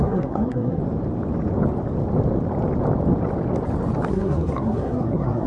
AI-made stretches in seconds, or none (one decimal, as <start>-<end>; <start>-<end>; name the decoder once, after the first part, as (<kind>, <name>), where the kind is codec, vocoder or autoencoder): 0.0-0.8 (codec, SNAC); 4.1-5.5